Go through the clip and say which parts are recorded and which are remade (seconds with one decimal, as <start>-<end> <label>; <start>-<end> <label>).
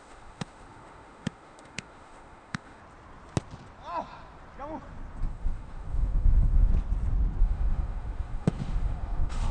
0.0-2.8 remade; 2.8-5.3 recorded; 5.3-6.7 remade; 6.7-7.4 recorded; 7.4-9.5 remade